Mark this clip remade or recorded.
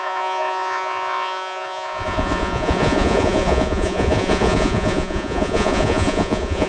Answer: remade